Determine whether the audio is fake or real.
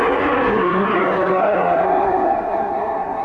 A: fake